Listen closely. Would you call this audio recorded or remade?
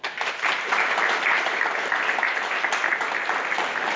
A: recorded